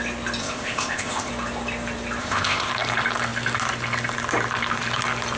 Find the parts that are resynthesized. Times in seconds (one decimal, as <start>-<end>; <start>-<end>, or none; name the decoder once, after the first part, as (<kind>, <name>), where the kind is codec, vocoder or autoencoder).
0.4-1.3 (codec, ZipCodec); 2.2-2.7